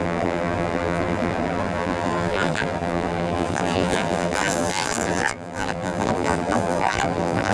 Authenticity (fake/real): fake